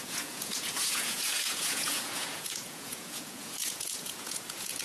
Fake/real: fake